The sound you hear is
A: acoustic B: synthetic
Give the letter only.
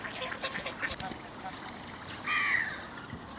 A